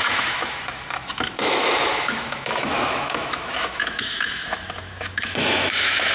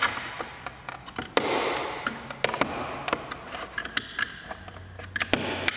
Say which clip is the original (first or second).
second